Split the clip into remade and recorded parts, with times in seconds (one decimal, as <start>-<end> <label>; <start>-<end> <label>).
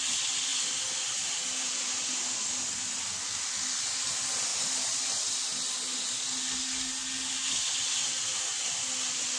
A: 0.0-9.4 recorded